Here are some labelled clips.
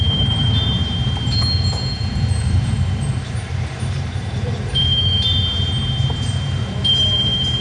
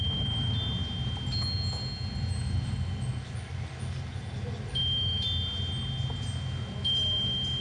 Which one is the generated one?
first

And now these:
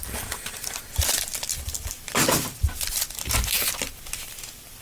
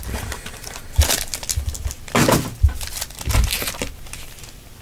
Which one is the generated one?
first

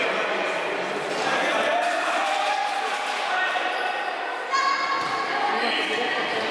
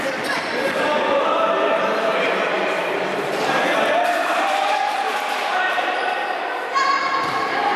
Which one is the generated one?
second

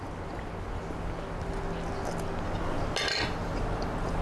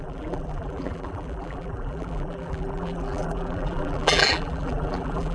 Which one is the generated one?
second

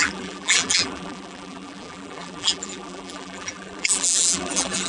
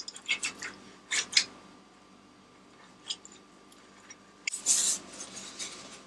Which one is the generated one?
first